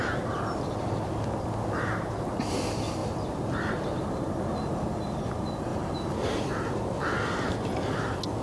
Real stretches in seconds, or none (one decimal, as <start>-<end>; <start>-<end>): 0.6-5.7; 6.5-8.4